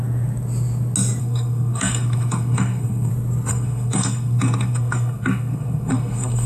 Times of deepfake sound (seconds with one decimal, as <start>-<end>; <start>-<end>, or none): 1.2-3.1; 3.5-6.5